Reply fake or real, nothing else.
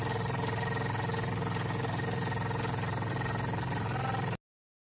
real